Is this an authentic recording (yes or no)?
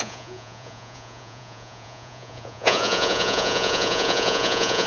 no